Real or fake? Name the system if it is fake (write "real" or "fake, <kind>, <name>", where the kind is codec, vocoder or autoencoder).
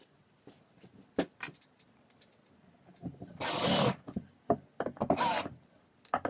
real